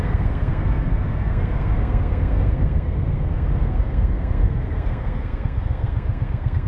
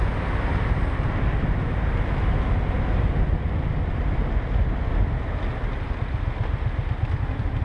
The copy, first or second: first